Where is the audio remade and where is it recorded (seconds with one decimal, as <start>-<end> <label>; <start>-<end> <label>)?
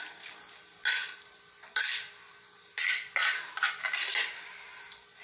0.0-1.0 recorded; 1.0-4.1 remade; 4.1-5.2 recorded